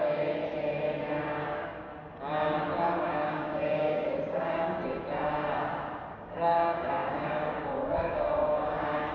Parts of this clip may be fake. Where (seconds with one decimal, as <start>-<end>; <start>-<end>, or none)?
0.0-0.4; 1.2-1.9; 3.0-4.8; 6.1-9.1